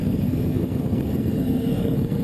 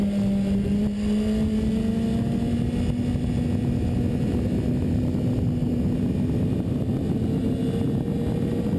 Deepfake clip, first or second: first